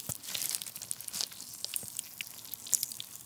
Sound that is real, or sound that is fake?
real